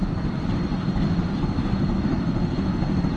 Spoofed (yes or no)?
no